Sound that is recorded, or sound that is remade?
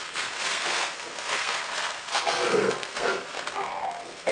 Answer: remade